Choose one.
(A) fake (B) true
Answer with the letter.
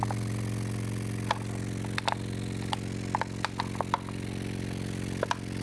B